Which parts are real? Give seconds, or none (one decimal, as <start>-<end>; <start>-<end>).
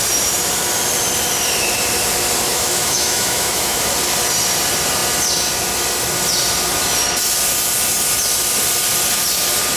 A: 0.0-2.5; 3.8-9.8